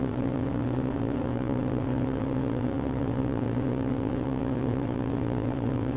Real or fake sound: fake